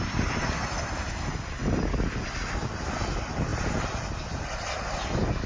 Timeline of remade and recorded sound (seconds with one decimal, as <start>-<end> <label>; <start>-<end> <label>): 0.0-5.5 recorded